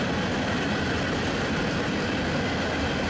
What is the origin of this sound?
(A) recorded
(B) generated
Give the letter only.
A